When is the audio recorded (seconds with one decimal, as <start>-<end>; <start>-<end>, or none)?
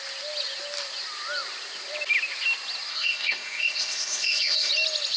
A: 0.0-2.9; 4.7-5.2